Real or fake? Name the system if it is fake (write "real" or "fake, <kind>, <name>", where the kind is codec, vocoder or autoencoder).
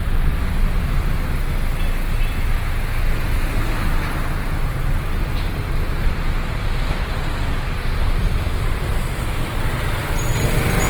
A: real